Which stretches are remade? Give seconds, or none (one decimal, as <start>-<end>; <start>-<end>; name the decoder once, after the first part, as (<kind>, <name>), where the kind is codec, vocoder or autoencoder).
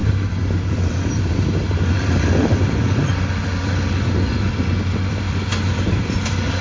0.0-6.6 (vocoder, BigVGAN v2)